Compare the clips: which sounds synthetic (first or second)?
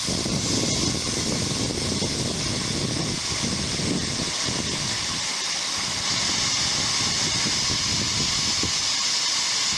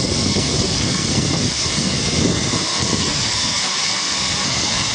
second